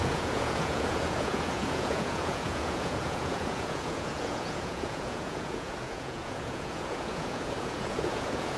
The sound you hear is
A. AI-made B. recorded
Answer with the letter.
A